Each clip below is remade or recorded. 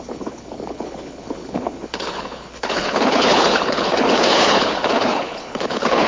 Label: remade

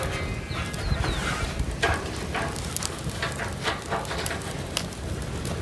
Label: recorded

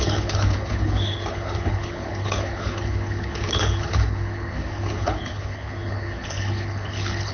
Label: remade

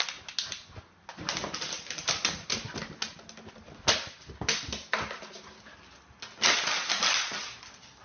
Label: recorded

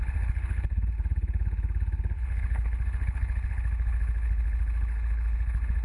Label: remade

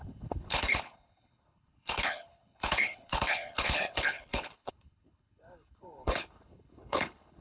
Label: remade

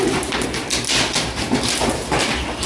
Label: recorded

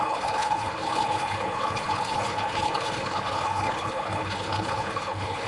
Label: remade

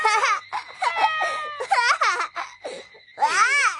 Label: recorded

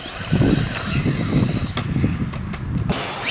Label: recorded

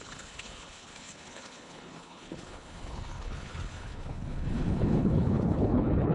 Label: remade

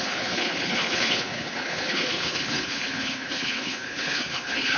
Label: remade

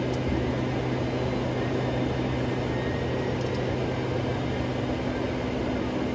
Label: recorded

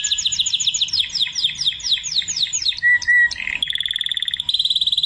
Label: recorded